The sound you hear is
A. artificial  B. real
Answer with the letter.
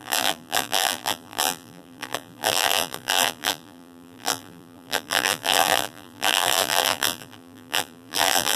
A